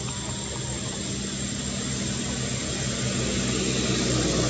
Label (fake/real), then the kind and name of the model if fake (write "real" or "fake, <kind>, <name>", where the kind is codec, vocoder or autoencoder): real